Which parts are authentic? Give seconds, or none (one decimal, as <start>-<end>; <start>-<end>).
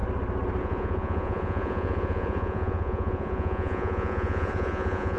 0.0-0.6